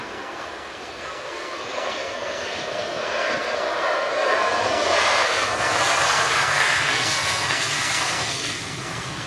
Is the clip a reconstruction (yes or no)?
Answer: yes